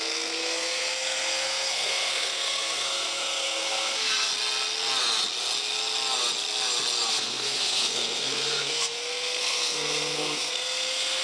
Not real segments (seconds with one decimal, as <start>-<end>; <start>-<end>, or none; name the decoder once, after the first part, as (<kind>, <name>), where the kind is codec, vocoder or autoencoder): 0.0-4.3 (codec, SNAC); 7.1-11.2